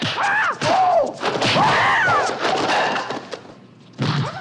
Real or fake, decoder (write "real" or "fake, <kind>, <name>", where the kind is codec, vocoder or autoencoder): real